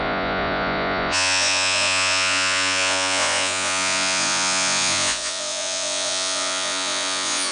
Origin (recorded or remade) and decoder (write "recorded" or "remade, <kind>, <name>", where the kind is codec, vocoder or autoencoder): remade, vocoder, Vocos